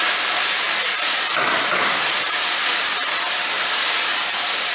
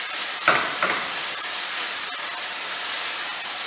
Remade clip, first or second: second